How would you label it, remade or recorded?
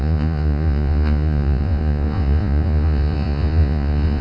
remade